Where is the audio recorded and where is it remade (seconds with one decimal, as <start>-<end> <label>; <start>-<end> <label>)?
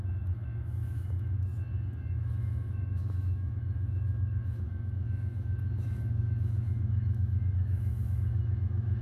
0.0-1.5 remade; 1.5-2.1 recorded; 2.1-9.0 remade